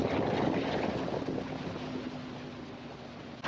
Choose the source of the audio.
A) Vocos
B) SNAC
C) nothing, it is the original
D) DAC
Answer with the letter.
C